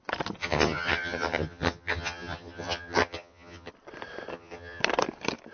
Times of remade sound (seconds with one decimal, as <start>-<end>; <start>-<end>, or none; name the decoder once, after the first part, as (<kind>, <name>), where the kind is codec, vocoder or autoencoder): 0.4-3.7 (vocoder, HiFi-GAN); 4.3-4.8